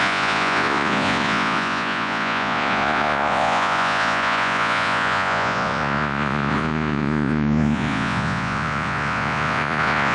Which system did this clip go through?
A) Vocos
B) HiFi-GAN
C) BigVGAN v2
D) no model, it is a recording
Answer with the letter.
A